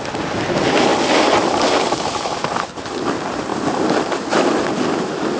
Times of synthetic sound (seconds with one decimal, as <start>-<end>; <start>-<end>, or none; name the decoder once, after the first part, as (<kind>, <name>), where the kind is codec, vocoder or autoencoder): none